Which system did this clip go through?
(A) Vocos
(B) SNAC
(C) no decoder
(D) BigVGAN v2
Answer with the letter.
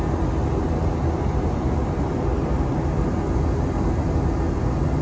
C